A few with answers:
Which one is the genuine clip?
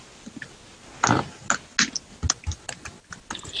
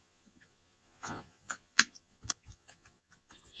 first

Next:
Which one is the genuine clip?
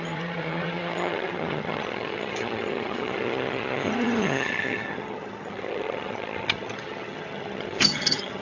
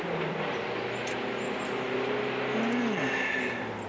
second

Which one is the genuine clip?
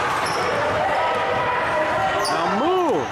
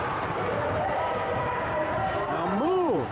first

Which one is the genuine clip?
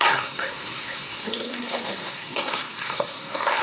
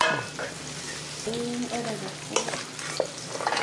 second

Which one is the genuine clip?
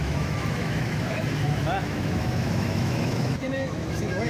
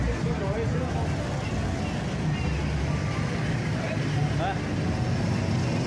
second